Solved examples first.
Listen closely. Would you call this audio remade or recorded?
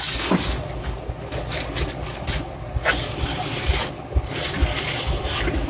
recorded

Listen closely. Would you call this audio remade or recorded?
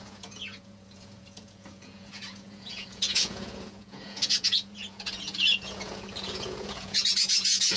remade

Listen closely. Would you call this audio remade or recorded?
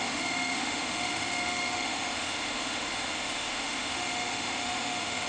remade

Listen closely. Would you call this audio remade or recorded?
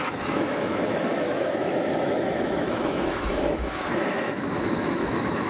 remade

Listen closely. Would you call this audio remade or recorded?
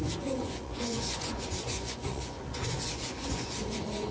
remade